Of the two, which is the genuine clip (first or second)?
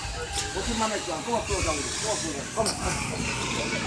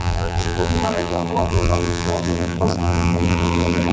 first